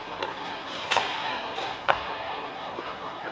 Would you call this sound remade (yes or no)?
yes